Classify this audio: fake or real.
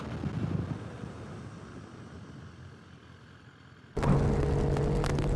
real